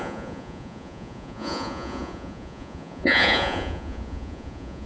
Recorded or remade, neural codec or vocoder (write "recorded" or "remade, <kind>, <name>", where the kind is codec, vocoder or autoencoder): remade, vocoder, Vocos